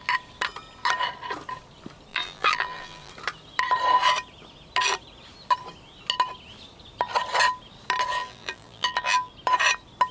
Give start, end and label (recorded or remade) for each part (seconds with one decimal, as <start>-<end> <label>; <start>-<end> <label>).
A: 0.0-2.1 recorded; 2.1-3.1 remade; 3.1-8.2 recorded; 8.2-9.3 remade; 9.3-10.1 recorded

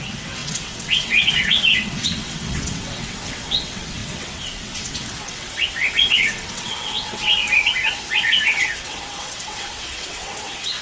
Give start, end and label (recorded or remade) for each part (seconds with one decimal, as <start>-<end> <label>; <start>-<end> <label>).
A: 0.0-7.4 remade; 7.4-8.2 recorded; 8.2-10.8 remade

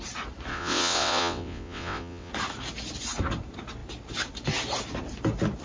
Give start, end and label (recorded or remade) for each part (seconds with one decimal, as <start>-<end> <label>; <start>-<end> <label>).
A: 0.0-0.5 recorded; 0.5-2.3 remade; 2.3-5.6 recorded

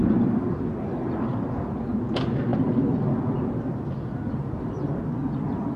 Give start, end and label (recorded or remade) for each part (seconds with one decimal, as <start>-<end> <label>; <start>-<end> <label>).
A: 0.0-2.5 recorded; 2.5-5.0 remade; 5.0-5.8 recorded

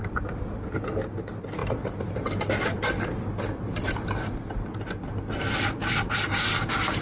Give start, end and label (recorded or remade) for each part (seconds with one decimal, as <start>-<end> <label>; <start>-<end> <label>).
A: 0.0-1.6 recorded; 1.6-4.1 remade; 4.1-7.0 recorded

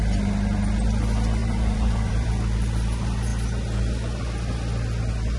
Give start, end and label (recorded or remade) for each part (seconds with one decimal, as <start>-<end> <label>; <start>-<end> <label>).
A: 0.0-1.4 recorded; 1.4-2.3 remade; 2.3-5.4 recorded